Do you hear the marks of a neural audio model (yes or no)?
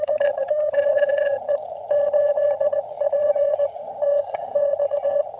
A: yes